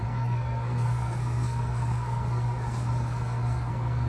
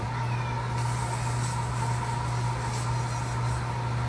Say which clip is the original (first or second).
second